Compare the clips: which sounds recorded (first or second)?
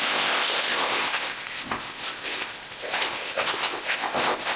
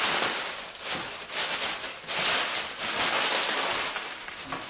second